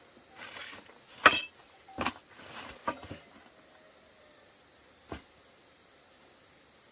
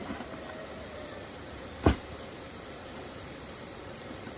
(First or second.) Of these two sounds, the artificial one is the second